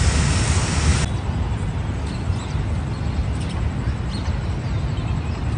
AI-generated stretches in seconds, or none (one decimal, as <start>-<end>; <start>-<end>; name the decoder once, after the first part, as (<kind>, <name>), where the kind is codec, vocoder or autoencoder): none